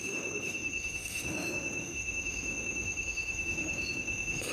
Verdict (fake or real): fake